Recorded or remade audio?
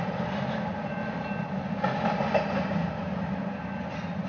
recorded